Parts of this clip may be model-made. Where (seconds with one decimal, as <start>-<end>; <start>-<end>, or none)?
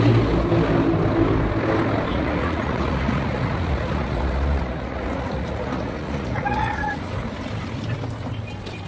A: 2.1-7.0